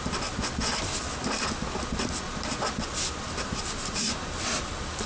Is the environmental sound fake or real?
real